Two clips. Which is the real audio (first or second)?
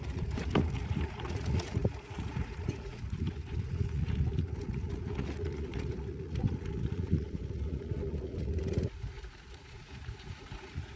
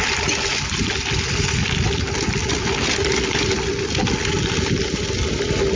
second